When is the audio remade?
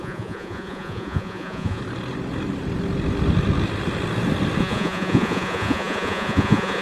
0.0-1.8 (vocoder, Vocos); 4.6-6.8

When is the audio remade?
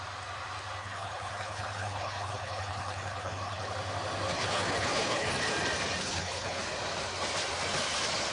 0.8-3.7 (codec, HILCodec); 4.3-5.3; 6.0-6.6